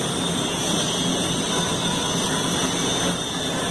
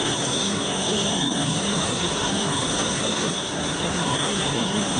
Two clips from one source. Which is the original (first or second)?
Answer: first